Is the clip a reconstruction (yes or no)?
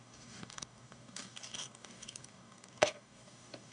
yes